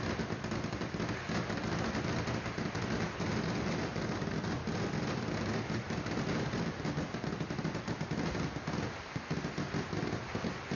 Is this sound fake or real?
real